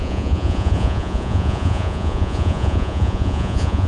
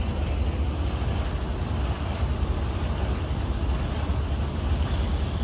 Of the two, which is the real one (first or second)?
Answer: second